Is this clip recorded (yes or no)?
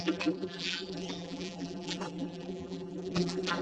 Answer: no